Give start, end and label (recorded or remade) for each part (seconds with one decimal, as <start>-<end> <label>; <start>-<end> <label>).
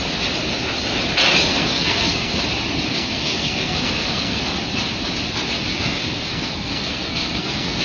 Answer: 0.0-1.5 recorded; 1.5-2.4 remade; 2.4-2.9 recorded; 2.9-4.4 remade; 4.4-5.7 recorded; 5.7-7.8 remade